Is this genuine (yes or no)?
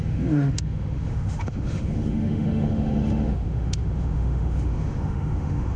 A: no